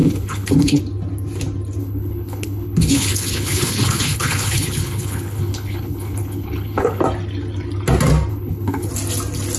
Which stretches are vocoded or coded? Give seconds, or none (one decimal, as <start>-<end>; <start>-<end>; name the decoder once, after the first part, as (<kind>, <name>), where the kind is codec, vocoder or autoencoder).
0.0-0.8 (codec, HILCodec); 1.8-7.0; 8.3-8.9